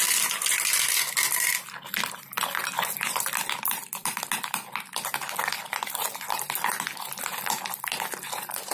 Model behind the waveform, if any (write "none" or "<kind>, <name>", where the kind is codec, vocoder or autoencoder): none